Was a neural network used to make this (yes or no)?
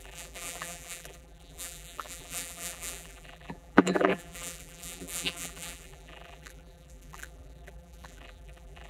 yes